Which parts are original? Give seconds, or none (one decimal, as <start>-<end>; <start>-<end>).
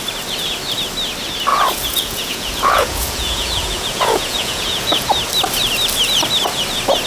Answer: 0.0-1.5; 5.1-7.1